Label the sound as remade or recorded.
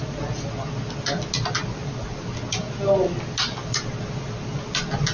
recorded